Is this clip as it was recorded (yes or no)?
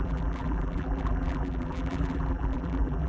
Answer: no